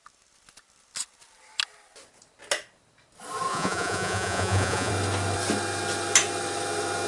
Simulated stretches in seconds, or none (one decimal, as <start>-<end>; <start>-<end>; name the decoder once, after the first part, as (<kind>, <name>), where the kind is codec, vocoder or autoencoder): 3.5-4.9 (vocoder, Vocos)